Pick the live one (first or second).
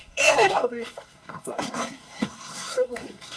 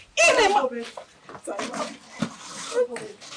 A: second